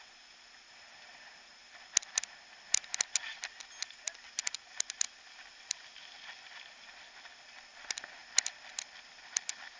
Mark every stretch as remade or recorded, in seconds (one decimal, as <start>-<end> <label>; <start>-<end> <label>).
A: 0.0-9.8 recorded